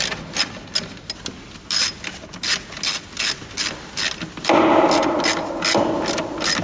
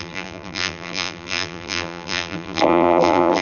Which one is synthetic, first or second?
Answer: second